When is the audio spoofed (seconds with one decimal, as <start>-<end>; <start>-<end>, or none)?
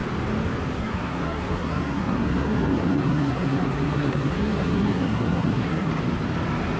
0.8-5.9